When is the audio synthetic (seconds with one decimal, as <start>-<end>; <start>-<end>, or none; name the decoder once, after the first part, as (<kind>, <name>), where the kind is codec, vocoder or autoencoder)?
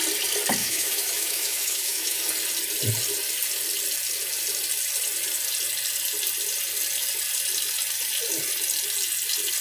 0.6-2.2 (autoencoder, DAC-VAE)